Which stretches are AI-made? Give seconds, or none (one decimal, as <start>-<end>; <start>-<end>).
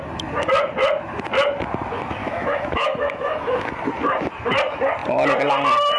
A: 2.2-3.7